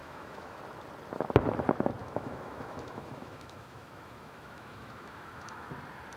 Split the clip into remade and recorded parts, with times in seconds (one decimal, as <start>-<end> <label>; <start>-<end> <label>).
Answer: 0.0-0.6 remade; 0.6-2.0 recorded; 2.0-5.7 remade; 5.7-6.2 recorded